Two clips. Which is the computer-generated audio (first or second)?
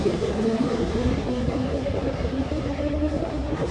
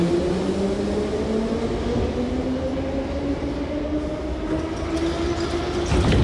first